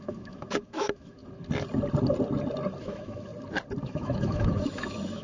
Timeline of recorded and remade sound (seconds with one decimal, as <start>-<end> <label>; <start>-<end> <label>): 0.0-1.2 remade; 1.2-2.8 recorded; 2.8-3.3 remade; 3.3-3.8 recorded; 3.8-5.2 remade